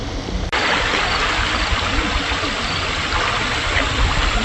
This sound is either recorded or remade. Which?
recorded